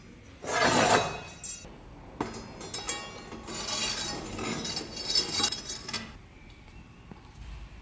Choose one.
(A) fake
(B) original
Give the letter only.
B